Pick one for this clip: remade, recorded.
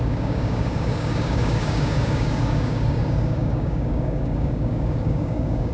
remade